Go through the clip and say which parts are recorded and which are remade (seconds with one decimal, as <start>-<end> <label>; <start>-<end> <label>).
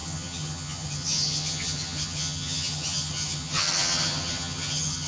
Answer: 0.0-5.1 remade